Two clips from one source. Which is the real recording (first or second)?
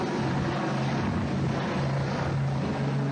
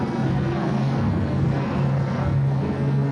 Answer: first